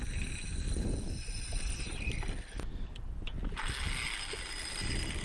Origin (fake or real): real